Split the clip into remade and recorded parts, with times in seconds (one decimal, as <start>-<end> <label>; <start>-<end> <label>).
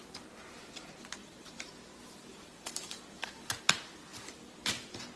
0.0-1.2 recorded; 1.2-1.7 remade; 1.7-2.3 recorded; 2.3-3.5 remade; 3.5-5.2 recorded